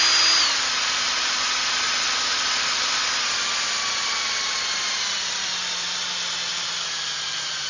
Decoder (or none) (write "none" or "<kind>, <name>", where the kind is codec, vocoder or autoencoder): none